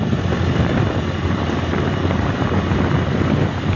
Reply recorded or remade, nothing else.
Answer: remade